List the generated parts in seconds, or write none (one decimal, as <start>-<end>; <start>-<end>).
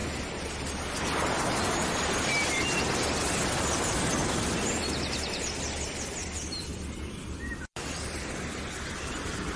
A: 6.2-7.5